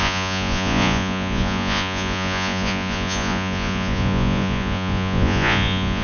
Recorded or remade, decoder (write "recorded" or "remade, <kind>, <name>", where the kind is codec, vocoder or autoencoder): remade, vocoder, Vocos